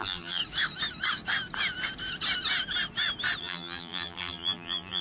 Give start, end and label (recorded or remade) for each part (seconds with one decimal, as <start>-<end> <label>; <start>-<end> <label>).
0.0-0.4 remade; 0.4-3.4 recorded; 3.4-5.0 remade